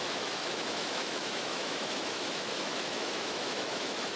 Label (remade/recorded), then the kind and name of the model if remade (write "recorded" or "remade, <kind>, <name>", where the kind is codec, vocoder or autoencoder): remade, autoencoder, DAC-VAE